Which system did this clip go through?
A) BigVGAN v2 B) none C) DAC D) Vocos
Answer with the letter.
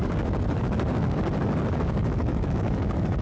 C